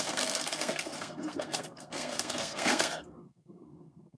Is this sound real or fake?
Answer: fake